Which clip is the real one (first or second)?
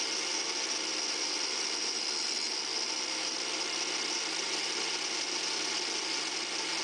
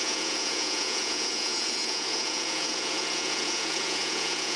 first